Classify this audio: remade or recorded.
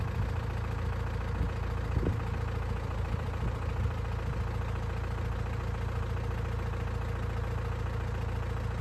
recorded